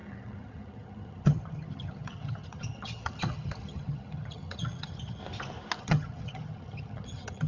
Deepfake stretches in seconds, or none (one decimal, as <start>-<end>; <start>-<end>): 0.0-5.2; 5.8-7.5